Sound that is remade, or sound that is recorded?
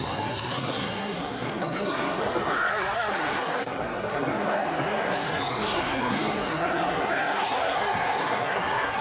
remade